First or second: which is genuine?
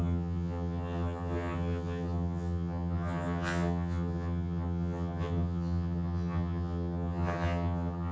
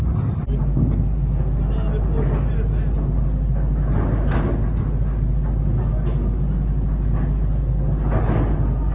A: second